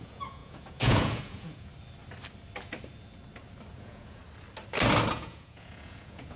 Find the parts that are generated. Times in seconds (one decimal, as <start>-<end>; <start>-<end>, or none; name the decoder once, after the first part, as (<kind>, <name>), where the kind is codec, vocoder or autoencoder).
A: 0.0-1.7 (vocoder, Vocos); 3.7-4.2; 5.1-6.4